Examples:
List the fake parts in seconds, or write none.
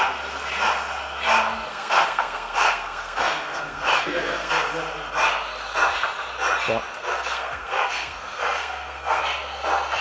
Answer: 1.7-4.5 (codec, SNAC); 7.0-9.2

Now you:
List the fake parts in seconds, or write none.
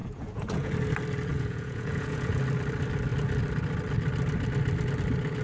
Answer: 0.0-0.7 (vocoder, Vocos); 1.3-2.3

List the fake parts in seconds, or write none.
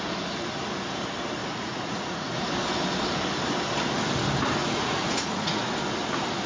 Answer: 1.4-2.4 (vocoder, Vocos); 4.6-5.7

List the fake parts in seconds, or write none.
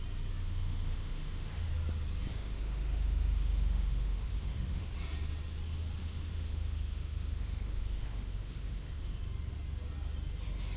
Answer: 0.4-1.7 (autoencoder, DAC-VAE); 2.3-4.9; 6.0-9.2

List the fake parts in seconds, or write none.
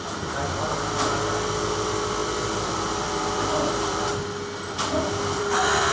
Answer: 2.2-5.9 (vocoder, BigVGAN v2)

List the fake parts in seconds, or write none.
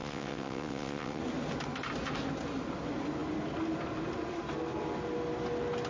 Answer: 0.0-1.2 (vocoder, WaveNeXt)